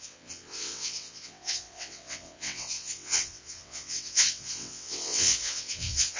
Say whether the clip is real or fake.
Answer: fake